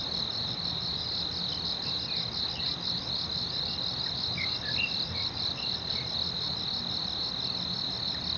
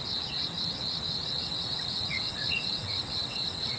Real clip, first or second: first